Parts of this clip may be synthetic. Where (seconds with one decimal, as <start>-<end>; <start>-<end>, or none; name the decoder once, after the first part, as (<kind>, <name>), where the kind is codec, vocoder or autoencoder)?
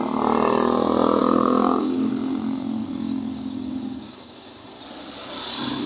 1.2-2.1 (codec, DAC); 2.8-4.8